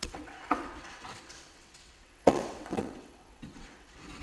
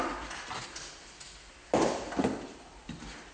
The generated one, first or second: first